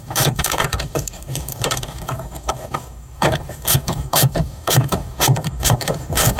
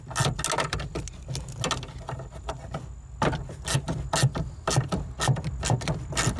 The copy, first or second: first